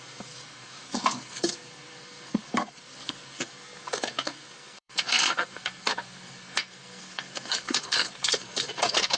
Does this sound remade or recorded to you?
remade